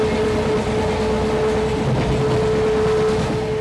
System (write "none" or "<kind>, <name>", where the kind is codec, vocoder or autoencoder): none